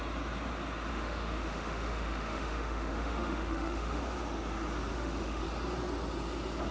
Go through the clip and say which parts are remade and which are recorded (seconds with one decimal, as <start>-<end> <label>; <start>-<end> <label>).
0.0-0.9 recorded; 0.9-4.0 remade; 4.0-4.9 recorded; 4.9-5.4 remade; 5.4-6.7 recorded